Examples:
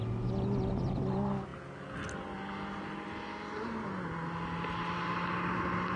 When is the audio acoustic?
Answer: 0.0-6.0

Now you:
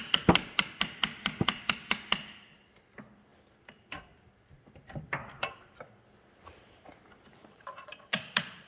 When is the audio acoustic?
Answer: 0.0-7.4

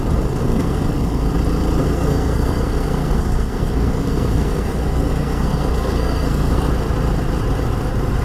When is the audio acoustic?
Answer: 0.0-0.4; 1.3-1.8; 6.7-8.2

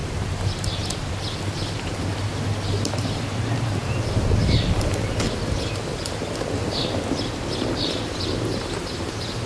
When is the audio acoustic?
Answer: 0.0-9.5

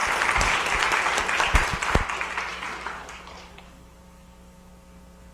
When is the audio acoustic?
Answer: 0.0-2.5; 4.7-5.3

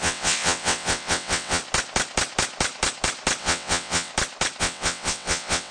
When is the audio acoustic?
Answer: 1.6-3.4; 4.1-4.6